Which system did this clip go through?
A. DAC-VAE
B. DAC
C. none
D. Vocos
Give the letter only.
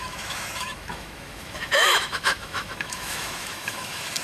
A